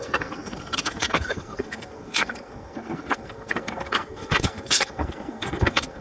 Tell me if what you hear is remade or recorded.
remade